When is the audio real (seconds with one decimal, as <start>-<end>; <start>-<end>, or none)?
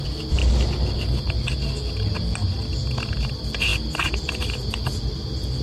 0.0-5.6